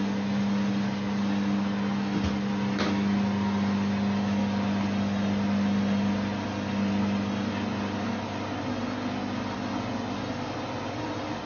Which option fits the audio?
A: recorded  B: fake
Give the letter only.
A